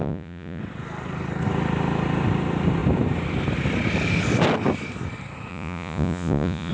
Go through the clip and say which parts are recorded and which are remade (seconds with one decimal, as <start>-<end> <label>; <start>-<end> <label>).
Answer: 0.0-0.6 remade; 0.6-5.5 recorded; 5.5-6.7 remade